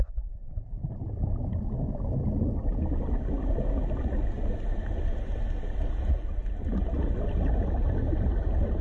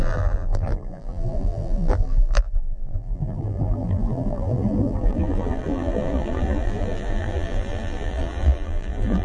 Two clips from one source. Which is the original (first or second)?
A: first